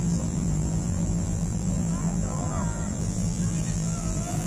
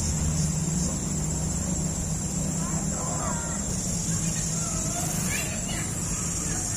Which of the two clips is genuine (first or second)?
second